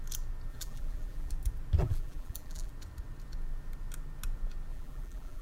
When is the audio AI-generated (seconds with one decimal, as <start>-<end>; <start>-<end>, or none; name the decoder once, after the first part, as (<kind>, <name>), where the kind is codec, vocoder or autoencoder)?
0.5-1.3 (vocoder, BigVGAN v2); 1.8-2.7; 4.7-5.4